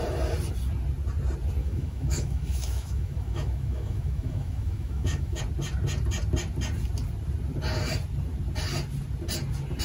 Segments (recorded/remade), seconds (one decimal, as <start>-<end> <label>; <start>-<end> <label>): 0.0-1.6 recorded; 1.6-5.4 remade; 5.4-9.8 recorded